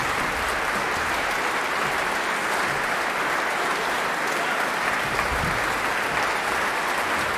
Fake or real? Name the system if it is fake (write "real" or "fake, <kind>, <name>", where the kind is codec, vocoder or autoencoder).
real